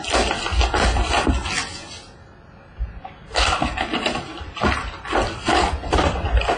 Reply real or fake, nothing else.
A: real